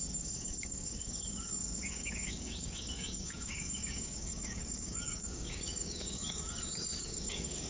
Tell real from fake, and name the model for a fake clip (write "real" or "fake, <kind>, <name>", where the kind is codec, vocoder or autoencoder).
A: fake, codec, DAC